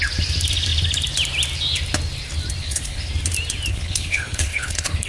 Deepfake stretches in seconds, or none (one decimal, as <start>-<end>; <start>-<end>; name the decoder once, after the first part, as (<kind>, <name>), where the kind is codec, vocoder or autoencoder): 2.6-3.1 (codec, HILCodec); 3.7-5.1